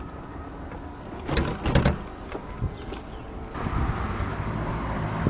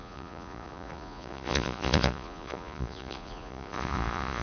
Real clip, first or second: first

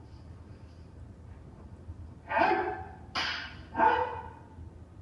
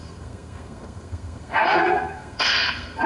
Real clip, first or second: first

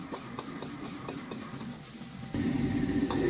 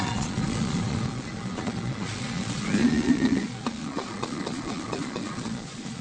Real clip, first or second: first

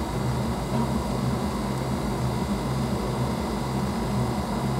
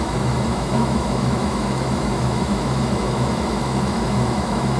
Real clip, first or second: first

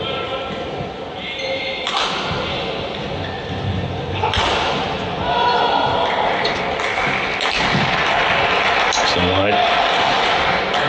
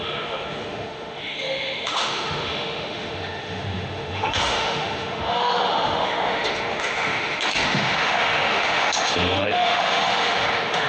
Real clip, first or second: first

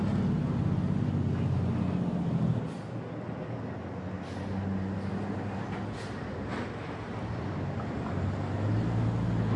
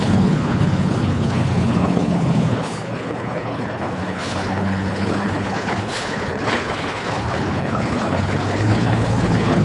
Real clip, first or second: first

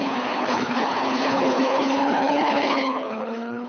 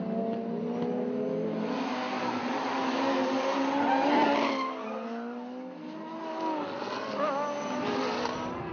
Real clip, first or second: second